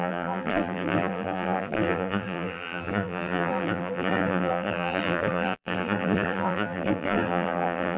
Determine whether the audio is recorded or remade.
remade